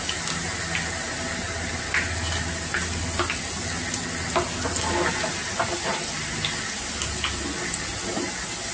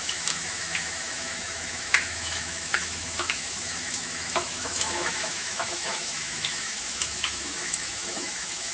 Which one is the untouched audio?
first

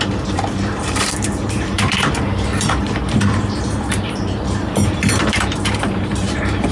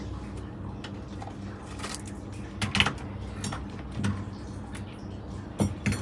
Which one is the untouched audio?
second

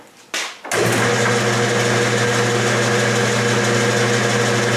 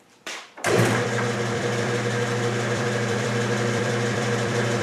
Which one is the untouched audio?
first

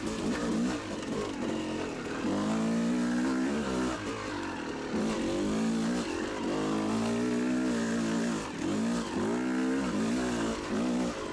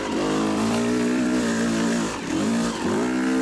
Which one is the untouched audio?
first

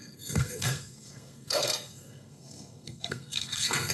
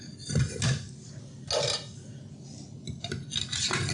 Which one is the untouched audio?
second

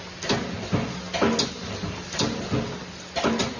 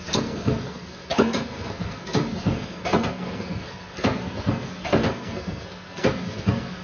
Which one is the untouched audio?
first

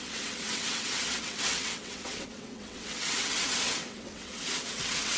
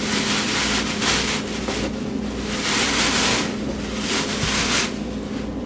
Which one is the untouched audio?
second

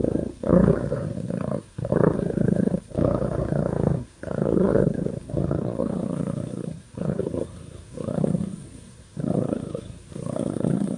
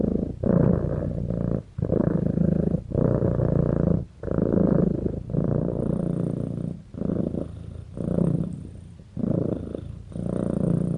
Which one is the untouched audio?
second